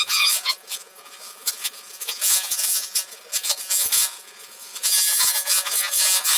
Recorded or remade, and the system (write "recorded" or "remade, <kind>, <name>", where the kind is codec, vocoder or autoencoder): remade, vocoder, Vocos